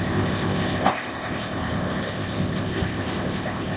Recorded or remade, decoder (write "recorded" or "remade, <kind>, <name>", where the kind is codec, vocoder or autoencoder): remade, codec, ZipCodec